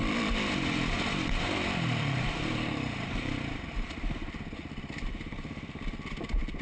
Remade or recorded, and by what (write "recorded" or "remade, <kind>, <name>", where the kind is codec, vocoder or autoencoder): remade, vocoder, BigVGAN v2